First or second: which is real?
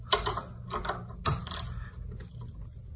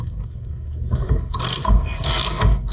first